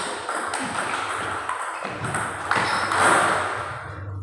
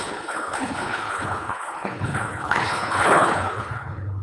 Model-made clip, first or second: second